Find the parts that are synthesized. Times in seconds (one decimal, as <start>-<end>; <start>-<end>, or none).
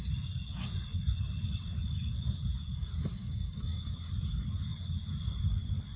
3.2-3.8